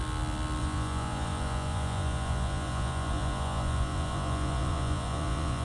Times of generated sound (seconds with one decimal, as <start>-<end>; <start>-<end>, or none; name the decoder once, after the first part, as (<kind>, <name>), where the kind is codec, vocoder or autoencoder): 0.6-5.6 (vocoder, Vocos)